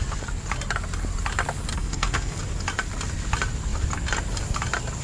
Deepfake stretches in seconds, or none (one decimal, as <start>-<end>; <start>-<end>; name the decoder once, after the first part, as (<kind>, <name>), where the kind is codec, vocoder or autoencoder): 1.7-2.4 (codec, SNAC)